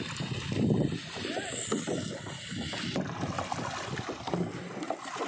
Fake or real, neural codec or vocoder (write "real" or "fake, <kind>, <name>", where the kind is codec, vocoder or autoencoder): real